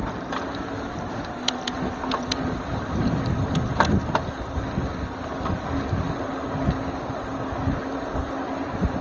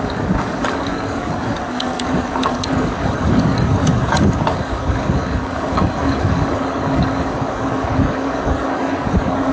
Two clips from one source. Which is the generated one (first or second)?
second